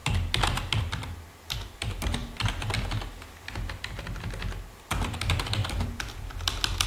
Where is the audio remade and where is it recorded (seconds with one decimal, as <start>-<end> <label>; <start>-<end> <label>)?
0.0-6.9 recorded